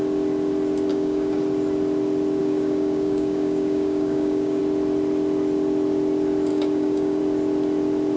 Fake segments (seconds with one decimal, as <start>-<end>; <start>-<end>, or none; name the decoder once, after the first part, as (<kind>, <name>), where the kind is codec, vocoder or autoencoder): 0.9-1.4 (codec, DAC); 2.4-4.6; 6.5-7.2